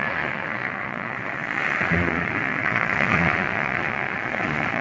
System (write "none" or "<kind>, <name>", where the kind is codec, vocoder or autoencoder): vocoder, Vocos